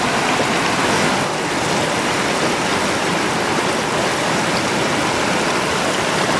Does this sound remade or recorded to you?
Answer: recorded